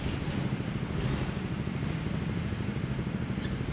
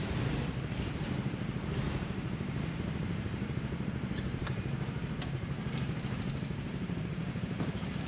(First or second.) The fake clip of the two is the second